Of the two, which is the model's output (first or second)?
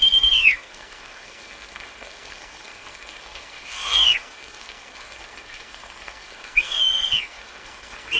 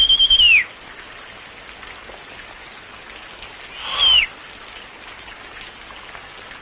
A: first